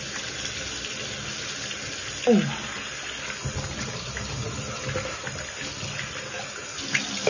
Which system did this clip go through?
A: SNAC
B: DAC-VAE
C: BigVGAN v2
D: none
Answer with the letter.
D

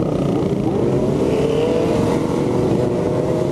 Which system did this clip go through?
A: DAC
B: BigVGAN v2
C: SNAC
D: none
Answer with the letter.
D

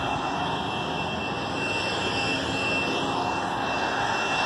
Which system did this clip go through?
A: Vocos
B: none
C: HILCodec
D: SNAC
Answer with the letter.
B